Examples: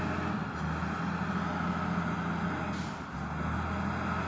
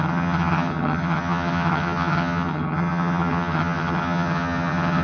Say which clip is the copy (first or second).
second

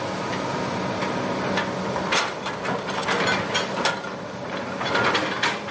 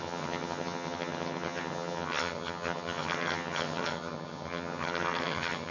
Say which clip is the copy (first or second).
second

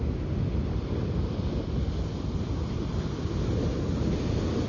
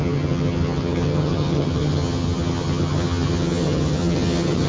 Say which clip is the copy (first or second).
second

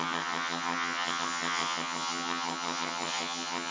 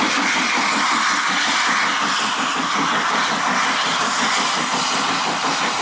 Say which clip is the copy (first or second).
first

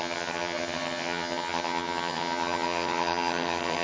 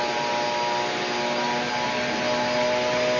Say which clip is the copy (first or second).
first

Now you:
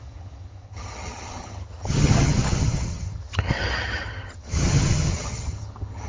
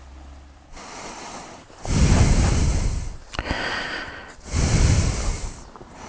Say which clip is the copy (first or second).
first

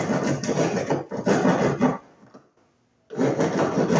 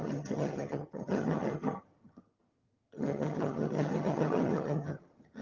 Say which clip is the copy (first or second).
second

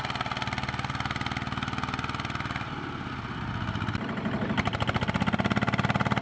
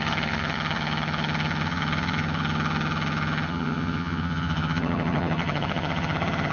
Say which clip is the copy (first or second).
second